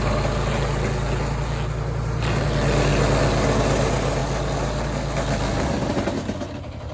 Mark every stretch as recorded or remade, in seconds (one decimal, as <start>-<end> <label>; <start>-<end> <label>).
0.0-6.9 recorded